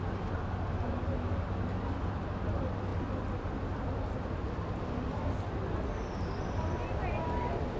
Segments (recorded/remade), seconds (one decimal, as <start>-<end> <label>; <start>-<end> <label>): 0.0-7.8 recorded